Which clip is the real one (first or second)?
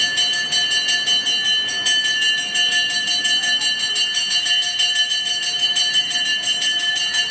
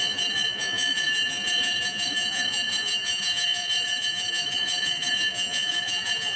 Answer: first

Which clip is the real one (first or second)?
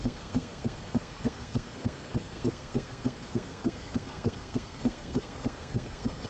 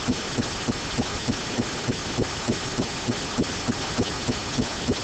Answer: second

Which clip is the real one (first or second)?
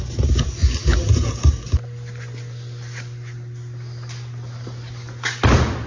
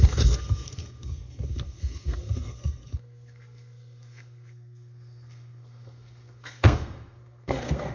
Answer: first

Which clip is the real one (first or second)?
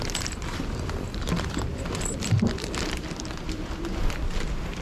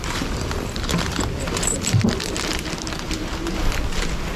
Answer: second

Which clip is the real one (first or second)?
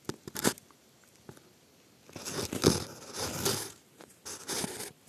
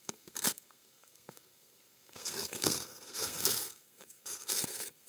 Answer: first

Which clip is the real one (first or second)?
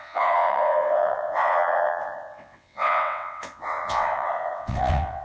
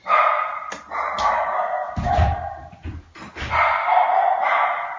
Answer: second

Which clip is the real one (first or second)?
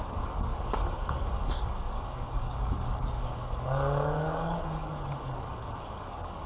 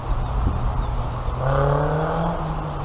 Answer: second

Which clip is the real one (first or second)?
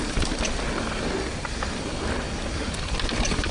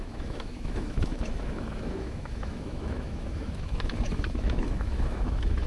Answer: first